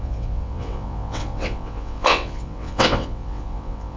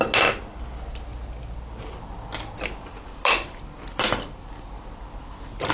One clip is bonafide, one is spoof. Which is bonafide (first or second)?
second